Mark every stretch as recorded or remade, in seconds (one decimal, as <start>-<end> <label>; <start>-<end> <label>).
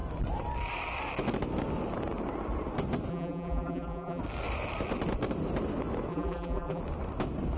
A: 0.0-3.1 recorded; 3.1-4.2 remade; 4.2-6.1 recorded; 6.1-6.8 remade; 6.8-7.6 recorded